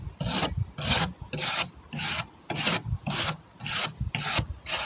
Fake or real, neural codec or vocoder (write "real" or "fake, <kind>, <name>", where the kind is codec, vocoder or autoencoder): real